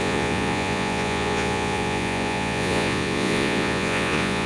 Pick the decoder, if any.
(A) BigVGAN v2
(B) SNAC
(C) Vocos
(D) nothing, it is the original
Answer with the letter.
C